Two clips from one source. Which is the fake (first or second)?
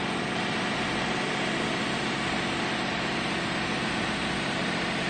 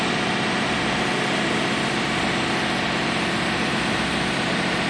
first